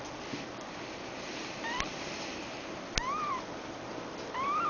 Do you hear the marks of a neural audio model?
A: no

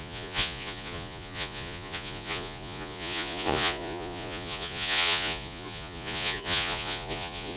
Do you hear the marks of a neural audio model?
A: yes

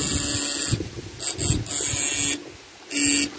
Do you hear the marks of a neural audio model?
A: no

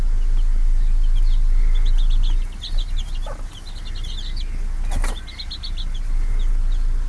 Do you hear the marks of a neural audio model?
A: no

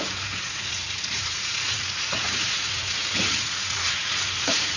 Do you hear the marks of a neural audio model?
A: yes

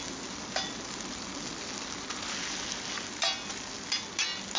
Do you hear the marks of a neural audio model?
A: no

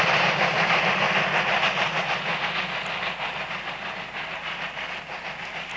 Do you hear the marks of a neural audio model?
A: no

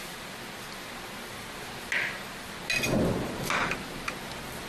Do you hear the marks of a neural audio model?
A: no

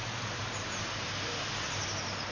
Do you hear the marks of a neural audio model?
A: no